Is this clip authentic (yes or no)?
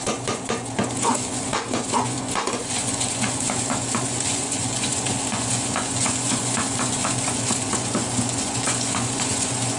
no